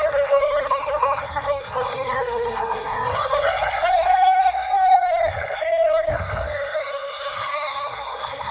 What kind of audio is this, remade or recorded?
remade